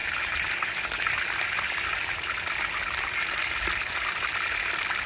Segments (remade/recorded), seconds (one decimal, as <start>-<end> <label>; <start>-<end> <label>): 0.0-5.1 recorded